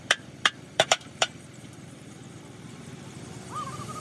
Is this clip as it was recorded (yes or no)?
no